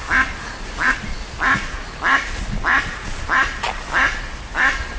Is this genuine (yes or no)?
yes